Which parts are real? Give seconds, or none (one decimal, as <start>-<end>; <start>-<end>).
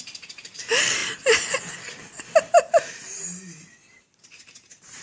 1.0-4.0